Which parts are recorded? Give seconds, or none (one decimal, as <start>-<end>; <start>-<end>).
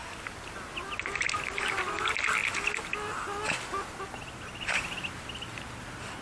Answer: 0.0-6.2